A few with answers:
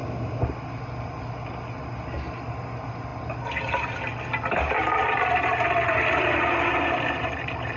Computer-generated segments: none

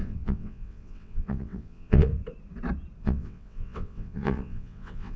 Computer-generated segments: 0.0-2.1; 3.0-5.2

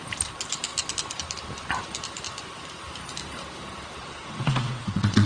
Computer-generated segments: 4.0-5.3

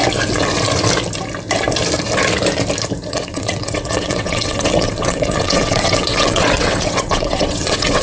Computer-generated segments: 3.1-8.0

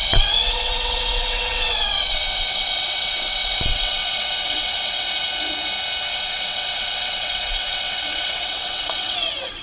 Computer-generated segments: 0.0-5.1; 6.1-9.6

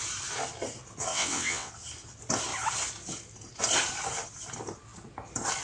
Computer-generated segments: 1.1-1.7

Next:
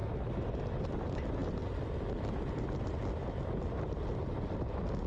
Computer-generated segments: none